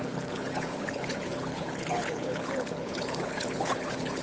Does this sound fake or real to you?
fake